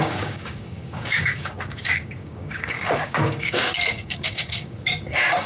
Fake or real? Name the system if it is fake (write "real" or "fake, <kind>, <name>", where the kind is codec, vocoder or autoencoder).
fake, codec, DAC